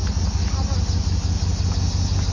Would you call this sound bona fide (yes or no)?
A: yes